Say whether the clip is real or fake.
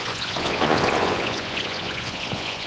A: fake